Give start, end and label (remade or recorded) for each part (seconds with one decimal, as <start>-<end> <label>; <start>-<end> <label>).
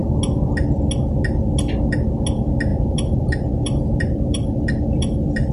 0.0-2.7 recorded; 2.7-5.5 remade